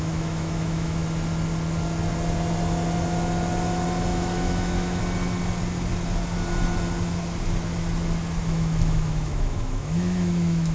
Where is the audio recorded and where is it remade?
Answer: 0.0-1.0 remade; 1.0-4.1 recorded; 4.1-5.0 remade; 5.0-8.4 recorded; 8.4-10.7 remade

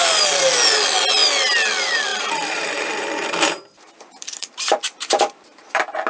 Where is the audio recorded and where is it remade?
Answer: 0.0-2.1 recorded; 2.1-6.1 remade

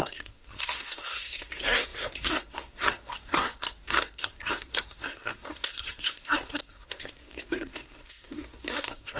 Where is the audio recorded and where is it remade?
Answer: 0.0-9.2 remade

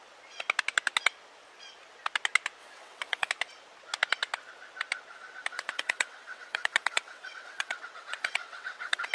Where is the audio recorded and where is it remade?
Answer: 0.0-2.6 recorded; 2.6-3.3 remade; 3.3-5.5 recorded; 5.5-9.1 remade